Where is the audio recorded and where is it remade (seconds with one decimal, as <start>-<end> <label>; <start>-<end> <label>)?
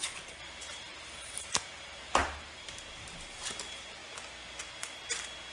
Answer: 0.0-4.0 remade; 4.0-5.5 recorded